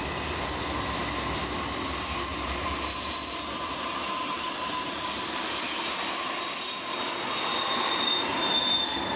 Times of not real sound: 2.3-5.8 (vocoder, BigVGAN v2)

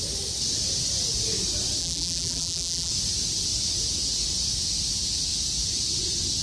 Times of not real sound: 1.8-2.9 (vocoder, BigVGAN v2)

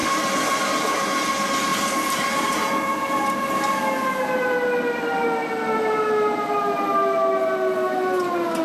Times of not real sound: 0.0-0.6 (vocoder, BigVGAN v2); 1.7-2.4

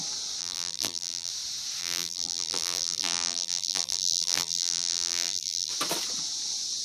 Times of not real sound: 0.4-1.3 (vocoder, BigVGAN v2); 1.8-5.7

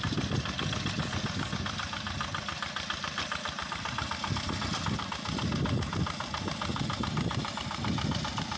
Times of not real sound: 6.7-7.5 (vocoder, BigVGAN v2)

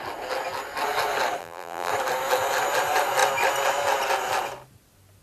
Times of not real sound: 1.4-1.9 (vocoder, BigVGAN v2)